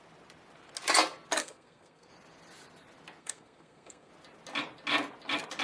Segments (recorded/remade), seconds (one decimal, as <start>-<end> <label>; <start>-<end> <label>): 0.0-1.4 recorded; 1.4-2.1 remade; 2.1-3.2 recorded; 3.2-4.1 remade; 4.1-5.6 recorded